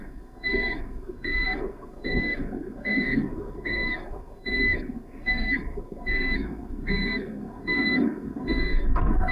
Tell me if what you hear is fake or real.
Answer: fake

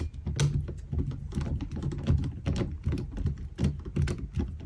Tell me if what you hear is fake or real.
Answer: real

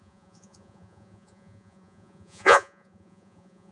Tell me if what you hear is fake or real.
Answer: fake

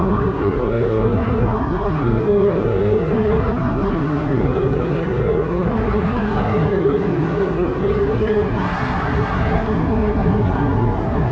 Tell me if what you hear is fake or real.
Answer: fake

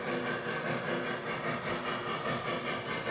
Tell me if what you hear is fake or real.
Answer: real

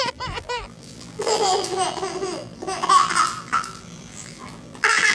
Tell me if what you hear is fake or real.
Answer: fake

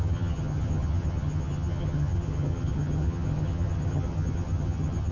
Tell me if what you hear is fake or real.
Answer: fake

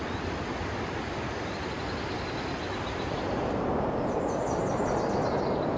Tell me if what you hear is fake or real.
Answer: real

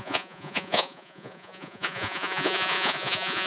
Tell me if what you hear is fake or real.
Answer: fake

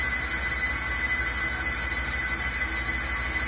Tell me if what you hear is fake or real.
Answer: real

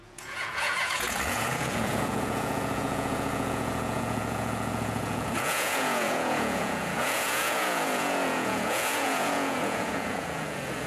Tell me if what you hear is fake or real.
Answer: fake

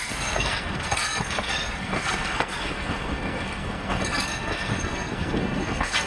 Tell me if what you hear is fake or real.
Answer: fake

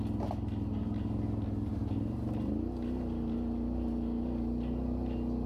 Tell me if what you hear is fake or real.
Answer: real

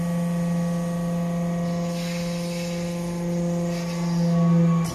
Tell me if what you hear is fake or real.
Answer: real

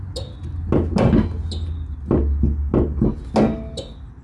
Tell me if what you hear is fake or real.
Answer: real